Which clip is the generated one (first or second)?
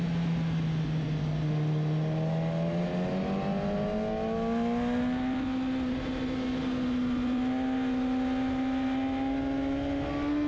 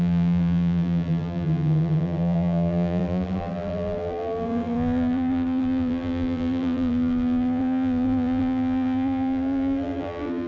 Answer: second